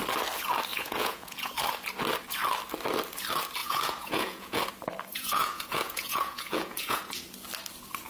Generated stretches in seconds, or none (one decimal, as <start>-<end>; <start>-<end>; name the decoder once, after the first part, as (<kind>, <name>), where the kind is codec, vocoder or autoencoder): 0.7-1.5 (vocoder, Vocos); 3.6-4.6; 5.1-7.1